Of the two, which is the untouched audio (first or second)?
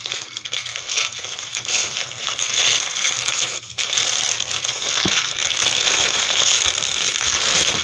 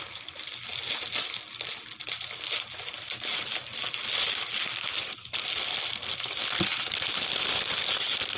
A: second